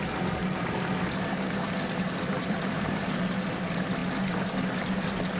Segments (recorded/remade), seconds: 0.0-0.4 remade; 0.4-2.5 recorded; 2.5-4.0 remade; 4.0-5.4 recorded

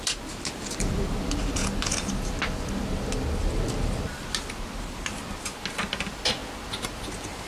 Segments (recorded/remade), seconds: 0.0-1.6 remade; 1.6-6.0 recorded; 6.0-6.4 remade; 6.4-7.5 recorded